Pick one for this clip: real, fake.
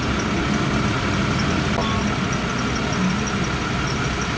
real